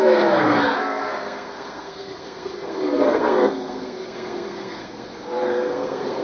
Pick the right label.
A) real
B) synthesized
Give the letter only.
B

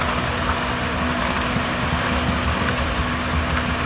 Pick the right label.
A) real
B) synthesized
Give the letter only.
A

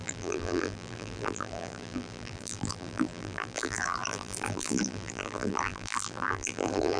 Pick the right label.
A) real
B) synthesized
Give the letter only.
B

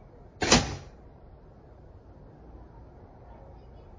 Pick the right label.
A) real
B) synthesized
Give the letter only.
A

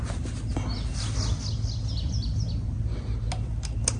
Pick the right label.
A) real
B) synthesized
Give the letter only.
A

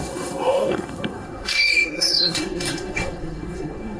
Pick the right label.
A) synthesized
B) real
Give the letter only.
A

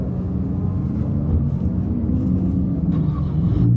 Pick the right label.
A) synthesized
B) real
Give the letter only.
B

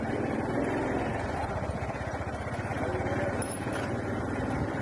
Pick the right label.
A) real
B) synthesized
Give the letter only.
A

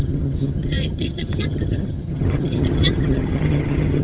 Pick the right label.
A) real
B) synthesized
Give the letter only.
B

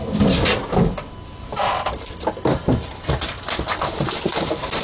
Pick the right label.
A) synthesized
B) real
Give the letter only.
B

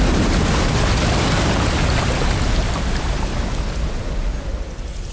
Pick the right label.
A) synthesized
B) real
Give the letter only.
B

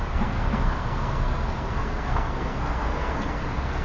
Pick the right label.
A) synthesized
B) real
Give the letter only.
A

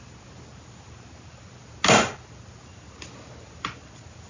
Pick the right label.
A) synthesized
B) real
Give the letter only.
B